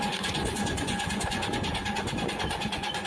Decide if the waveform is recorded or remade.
remade